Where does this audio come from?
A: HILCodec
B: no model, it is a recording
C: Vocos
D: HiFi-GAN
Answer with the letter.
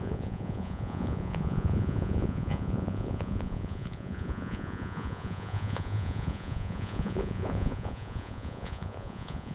C